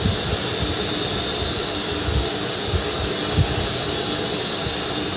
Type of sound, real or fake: real